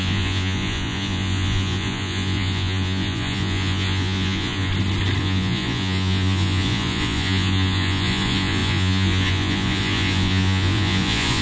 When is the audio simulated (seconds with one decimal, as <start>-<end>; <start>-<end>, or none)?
0.0-4.7; 5.2-11.4

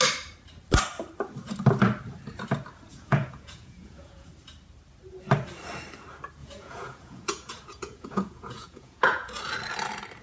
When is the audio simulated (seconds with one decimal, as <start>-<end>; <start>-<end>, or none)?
2.9-4.3; 6.4-9.4

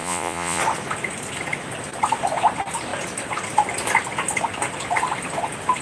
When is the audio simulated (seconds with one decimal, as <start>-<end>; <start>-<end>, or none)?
0.0-0.6

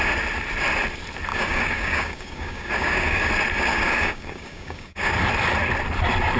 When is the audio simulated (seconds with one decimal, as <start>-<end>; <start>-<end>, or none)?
1.3-3.3; 3.7-5.1

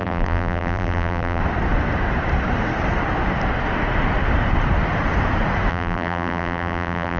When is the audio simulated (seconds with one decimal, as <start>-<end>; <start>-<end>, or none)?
0.0-1.4; 5.7-7.2

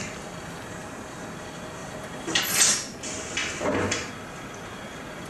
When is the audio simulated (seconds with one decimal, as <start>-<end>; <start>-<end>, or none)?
3.4-4.1

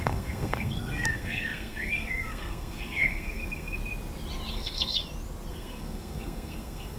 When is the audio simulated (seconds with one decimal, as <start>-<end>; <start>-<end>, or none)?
0.0-3.8; 4.5-5.0; 5.5-7.0